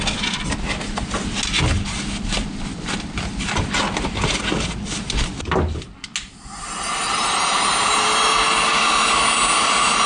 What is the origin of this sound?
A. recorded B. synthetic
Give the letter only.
A